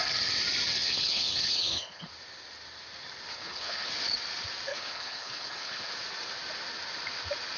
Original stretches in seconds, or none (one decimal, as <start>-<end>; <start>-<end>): 0.0-0.8; 2.1-3.3; 3.9-4.7; 5.9-7.6

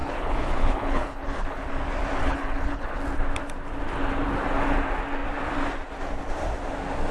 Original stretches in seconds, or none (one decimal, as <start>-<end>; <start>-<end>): 1.7-2.2; 3.0-7.1

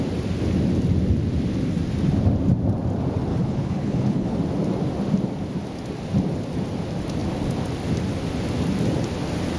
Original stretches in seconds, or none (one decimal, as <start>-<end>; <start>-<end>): 0.0-3.3; 4.4-9.6

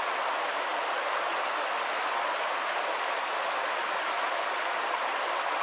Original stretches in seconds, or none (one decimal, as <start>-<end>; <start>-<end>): 0.0-5.6

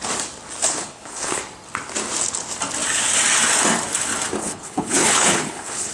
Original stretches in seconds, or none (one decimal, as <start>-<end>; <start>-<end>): 0.0-0.6; 1.4-4.4